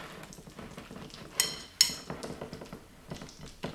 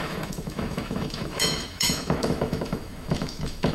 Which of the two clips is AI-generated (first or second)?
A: second